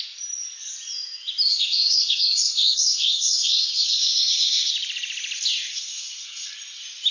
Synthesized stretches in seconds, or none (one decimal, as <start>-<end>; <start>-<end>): 1.5-4.7; 5.7-6.5